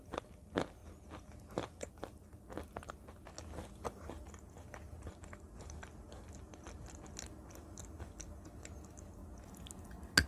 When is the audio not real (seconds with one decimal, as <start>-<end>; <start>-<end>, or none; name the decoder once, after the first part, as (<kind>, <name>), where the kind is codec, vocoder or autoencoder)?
none